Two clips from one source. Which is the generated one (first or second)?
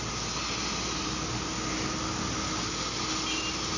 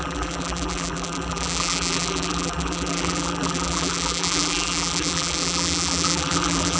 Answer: second